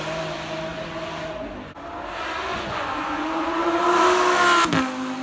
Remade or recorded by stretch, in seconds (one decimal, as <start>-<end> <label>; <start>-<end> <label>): 0.0-0.7 recorded; 0.7-1.5 remade; 1.5-2.5 recorded; 2.5-3.8 remade; 3.8-5.2 recorded